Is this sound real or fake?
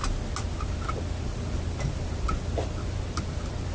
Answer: real